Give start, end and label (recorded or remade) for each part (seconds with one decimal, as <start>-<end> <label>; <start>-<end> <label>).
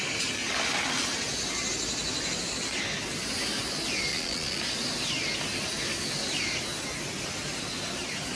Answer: 0.0-4.1 recorded; 4.1-4.6 remade; 4.6-8.4 recorded